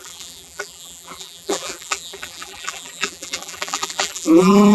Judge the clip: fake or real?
fake